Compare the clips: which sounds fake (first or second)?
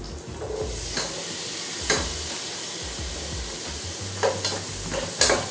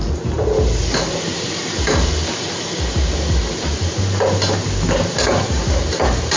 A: second